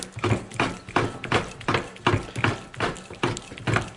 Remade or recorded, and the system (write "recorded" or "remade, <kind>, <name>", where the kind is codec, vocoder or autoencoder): recorded